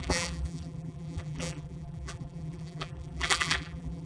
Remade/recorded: remade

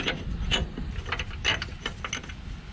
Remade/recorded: recorded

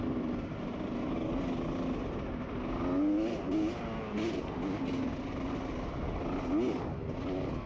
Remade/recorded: recorded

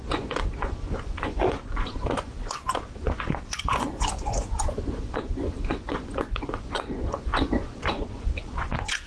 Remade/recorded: remade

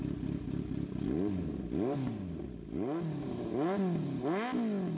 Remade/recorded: recorded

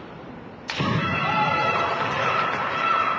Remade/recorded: recorded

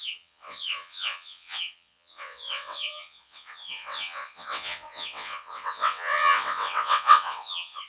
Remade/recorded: remade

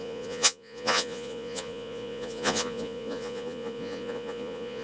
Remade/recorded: remade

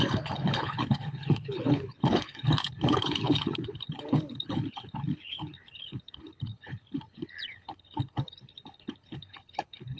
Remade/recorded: remade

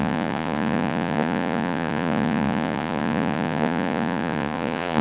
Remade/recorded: remade